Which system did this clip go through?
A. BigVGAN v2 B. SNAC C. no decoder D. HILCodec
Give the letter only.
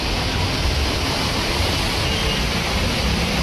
C